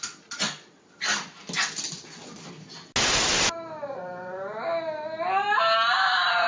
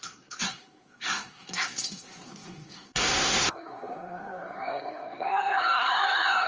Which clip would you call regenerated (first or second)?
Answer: second